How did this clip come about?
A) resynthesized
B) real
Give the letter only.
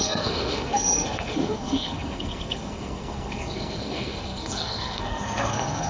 A